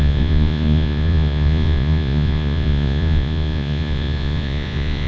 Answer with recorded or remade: remade